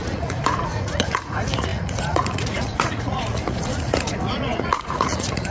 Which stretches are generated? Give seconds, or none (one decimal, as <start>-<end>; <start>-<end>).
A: 0.0-5.5